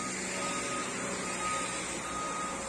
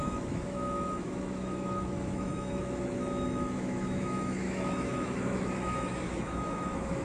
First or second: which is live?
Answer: first